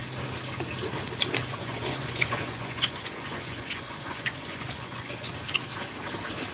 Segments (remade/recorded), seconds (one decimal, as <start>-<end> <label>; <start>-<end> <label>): 0.0-1.4 recorded; 1.4-5.3 remade; 5.3-6.5 recorded